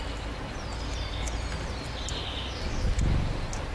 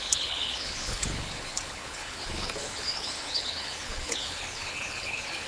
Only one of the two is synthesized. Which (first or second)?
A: second